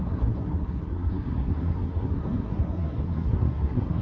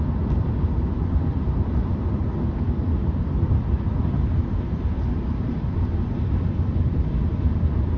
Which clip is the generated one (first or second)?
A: first